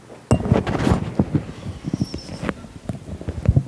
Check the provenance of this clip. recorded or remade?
recorded